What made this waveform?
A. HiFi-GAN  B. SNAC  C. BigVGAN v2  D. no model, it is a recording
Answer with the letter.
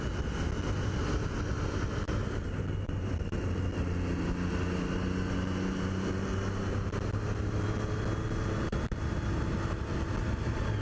D